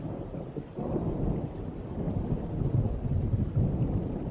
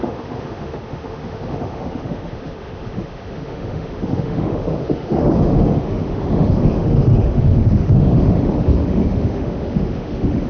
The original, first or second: first